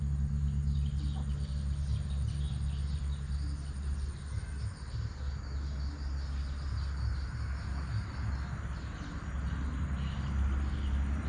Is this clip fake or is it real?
real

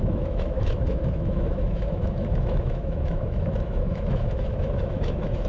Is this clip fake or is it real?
fake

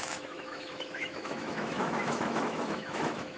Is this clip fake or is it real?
fake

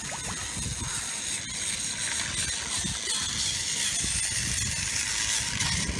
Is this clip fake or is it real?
real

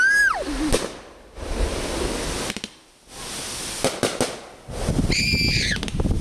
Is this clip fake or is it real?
real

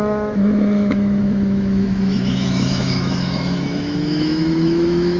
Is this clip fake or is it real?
fake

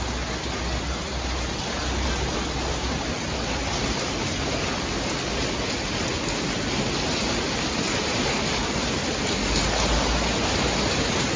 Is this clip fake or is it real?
real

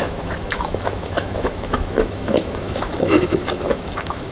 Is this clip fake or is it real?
fake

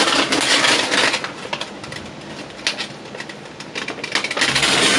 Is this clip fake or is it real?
real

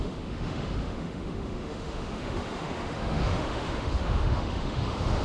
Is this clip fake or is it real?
fake